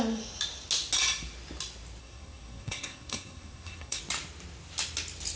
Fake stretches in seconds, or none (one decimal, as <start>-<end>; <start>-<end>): 2.0-4.0